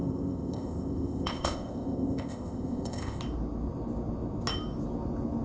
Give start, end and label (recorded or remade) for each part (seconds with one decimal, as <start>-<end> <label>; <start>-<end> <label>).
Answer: 0.0-3.2 remade; 3.2-5.4 recorded